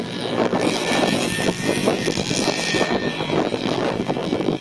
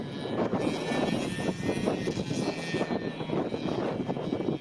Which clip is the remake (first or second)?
first